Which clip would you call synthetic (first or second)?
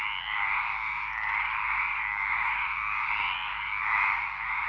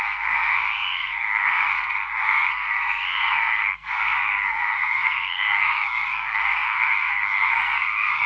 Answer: second